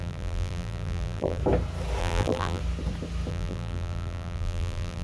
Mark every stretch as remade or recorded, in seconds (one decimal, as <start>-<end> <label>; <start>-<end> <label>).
0.0-1.4 remade; 1.4-2.0 recorded; 2.0-2.6 remade; 2.6-3.3 recorded; 3.3-5.0 remade